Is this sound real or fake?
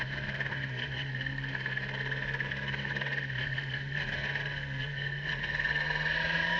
fake